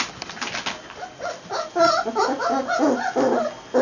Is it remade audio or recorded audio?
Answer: recorded